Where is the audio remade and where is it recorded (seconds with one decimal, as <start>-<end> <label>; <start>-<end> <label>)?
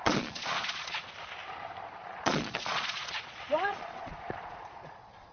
0.0-1.0 remade; 1.0-2.0 recorded; 2.0-5.3 remade